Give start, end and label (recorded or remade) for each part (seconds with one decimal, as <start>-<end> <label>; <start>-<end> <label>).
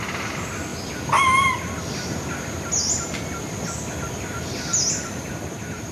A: 0.0-4.7 recorded; 4.7-5.3 remade; 5.3-5.9 recorded